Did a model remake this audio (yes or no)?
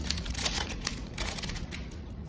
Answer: yes